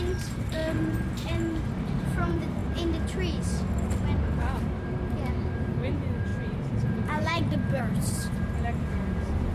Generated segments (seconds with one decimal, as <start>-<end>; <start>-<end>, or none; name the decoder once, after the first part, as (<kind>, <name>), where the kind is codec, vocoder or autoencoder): 0.0-0.6 (vocoder, BigVGAN v2); 1.3-2.6; 4.7-9.5